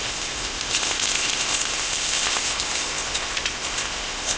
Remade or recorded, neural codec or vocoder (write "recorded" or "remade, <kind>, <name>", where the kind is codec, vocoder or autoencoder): remade, codec, ZipCodec